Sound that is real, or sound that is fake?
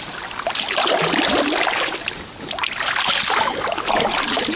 real